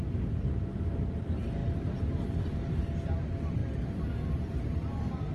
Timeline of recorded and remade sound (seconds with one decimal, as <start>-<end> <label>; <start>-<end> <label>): 0.0-5.3 recorded